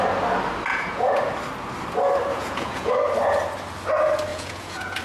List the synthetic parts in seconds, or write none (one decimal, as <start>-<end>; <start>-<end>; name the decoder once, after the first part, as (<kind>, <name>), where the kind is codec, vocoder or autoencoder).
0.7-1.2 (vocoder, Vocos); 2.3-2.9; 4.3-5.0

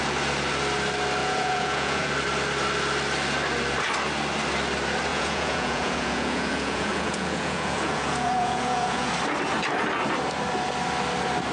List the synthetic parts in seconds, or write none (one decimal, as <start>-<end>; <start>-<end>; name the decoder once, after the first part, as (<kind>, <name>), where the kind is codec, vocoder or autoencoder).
1.2-2.1 (vocoder, Vocos); 5.1-9.1

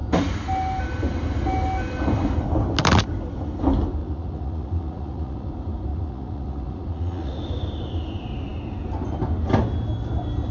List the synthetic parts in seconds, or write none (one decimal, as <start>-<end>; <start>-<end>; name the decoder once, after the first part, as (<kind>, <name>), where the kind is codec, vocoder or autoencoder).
4.0-5.5 (vocoder, Vocos); 5.9-7.4